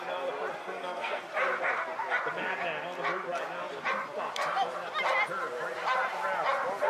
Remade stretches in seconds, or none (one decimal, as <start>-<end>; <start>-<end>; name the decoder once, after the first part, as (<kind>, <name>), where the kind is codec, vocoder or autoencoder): 0.6-1.2 (codec, SNAC)